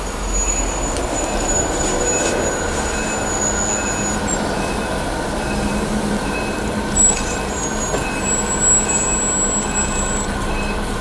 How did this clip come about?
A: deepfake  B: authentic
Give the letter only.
B